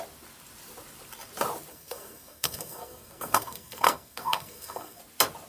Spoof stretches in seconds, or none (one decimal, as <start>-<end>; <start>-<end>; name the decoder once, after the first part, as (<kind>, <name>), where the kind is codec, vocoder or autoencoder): 1.7-5.0 (codec, SNAC)

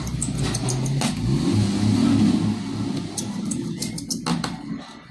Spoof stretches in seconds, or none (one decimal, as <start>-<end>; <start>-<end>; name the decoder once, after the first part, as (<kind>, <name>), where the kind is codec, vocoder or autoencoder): none